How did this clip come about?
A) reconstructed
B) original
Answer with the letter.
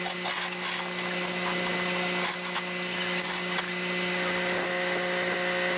B